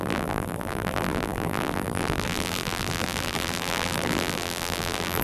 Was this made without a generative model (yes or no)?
no